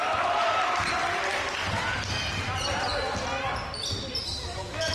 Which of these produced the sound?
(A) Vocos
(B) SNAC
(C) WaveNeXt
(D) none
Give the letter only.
D